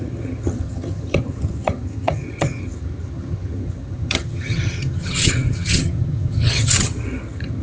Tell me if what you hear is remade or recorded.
remade